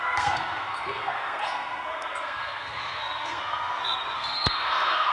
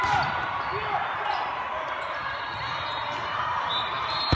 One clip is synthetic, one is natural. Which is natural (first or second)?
second